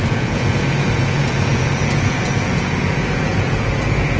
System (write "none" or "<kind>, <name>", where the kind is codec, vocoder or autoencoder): vocoder, Vocos